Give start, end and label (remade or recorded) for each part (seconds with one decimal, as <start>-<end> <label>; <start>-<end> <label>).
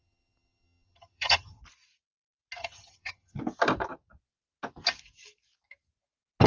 0.0-1.6 remade; 1.6-2.6 recorded; 2.6-3.4 remade; 3.4-6.5 recorded